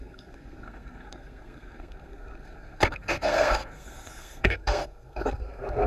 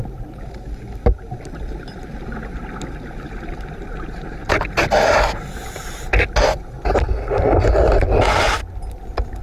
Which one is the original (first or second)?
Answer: second